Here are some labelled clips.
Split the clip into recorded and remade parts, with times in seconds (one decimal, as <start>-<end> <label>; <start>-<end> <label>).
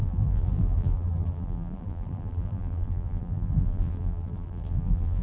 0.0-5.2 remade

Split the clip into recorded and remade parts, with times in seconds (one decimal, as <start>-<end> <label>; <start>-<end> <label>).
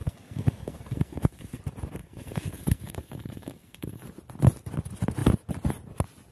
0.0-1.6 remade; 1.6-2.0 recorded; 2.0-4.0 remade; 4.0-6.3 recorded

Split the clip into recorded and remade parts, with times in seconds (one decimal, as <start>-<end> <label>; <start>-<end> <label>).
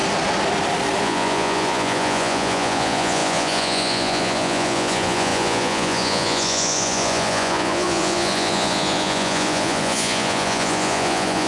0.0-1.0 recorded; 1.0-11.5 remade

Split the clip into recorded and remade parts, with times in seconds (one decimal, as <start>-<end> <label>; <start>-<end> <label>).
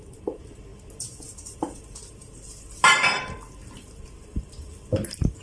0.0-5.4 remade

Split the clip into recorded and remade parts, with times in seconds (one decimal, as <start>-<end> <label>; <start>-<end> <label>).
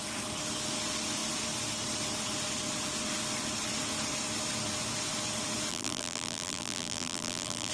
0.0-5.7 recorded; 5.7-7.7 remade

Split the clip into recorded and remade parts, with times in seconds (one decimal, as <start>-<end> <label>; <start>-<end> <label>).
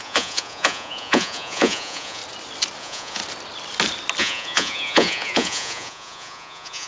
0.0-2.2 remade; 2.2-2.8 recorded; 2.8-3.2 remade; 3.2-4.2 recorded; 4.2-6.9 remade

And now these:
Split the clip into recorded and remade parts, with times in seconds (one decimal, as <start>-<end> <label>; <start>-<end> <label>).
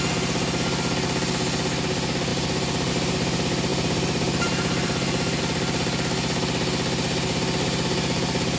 0.0-3.7 recorded; 3.7-5.4 remade; 5.4-8.6 recorded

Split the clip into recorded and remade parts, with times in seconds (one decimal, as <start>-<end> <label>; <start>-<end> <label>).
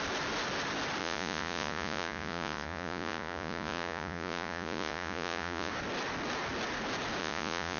0.0-1.0 recorded; 1.0-5.7 remade; 5.7-7.2 recorded; 7.2-7.8 remade